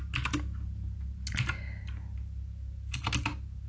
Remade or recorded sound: recorded